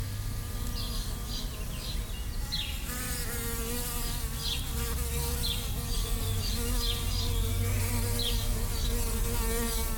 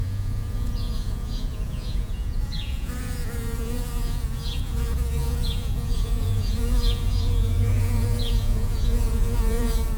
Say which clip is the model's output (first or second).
second